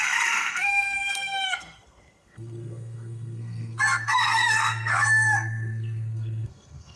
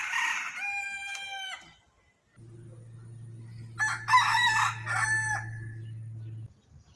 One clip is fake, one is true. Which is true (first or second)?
second